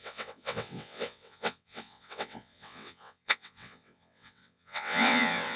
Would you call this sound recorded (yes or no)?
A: no